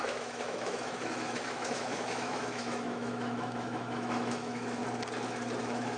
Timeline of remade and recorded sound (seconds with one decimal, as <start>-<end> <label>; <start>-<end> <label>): 0.0-4.8 remade; 4.8-5.6 recorded; 5.6-6.0 remade